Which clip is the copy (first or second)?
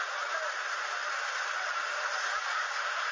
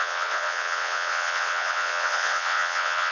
second